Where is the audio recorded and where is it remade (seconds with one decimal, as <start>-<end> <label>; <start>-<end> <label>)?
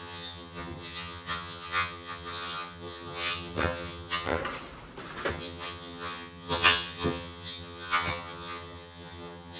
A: 0.0-4.4 remade; 4.4-5.3 recorded; 5.3-9.6 remade